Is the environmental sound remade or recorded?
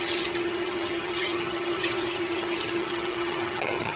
remade